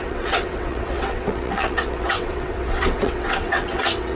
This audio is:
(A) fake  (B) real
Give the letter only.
A